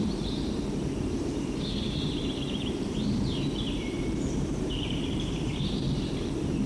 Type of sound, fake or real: fake